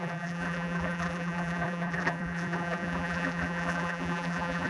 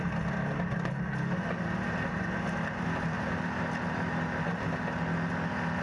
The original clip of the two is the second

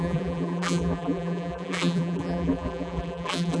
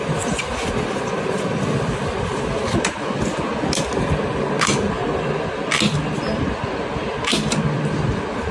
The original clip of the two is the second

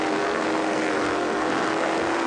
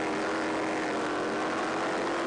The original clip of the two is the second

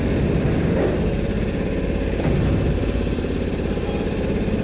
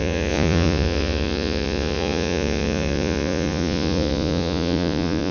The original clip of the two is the first